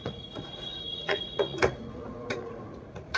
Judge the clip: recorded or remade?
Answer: remade